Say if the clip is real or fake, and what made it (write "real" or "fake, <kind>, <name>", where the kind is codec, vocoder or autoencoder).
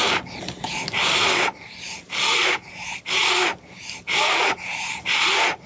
real